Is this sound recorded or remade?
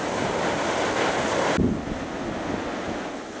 recorded